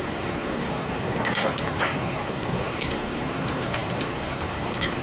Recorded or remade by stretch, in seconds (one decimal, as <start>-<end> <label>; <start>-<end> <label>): 0.0-5.0 remade